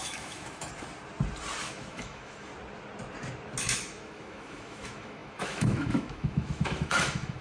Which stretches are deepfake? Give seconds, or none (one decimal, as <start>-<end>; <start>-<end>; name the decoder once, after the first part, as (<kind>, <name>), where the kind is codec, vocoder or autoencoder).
0.0-0.7 (autoencoder, DAC-VAE); 1.6-2.5; 3.6-7.4